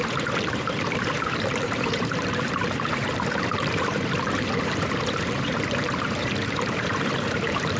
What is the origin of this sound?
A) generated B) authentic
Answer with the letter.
A